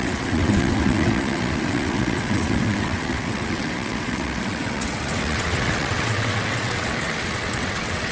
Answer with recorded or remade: remade